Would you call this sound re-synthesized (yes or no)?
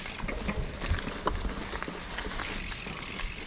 no